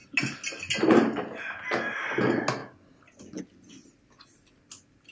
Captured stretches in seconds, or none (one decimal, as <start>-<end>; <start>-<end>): 0.0-5.1